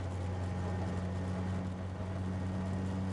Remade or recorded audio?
recorded